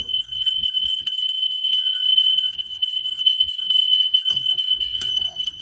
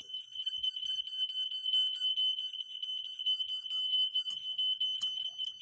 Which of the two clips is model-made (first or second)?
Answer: first